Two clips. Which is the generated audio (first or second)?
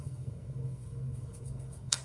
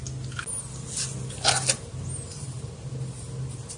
first